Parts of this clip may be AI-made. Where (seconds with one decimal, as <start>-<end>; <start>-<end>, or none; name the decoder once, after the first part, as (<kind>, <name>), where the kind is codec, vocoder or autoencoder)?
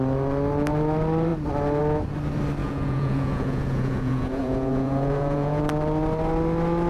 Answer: 2.6-5.6 (vocoder, Vocos)